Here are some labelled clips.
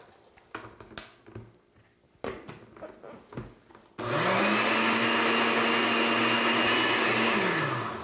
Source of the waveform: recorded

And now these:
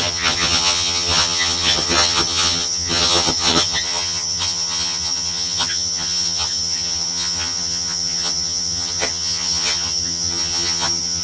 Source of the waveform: remade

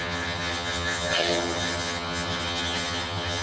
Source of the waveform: remade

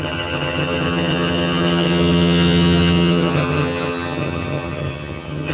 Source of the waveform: remade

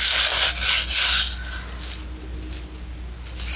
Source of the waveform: recorded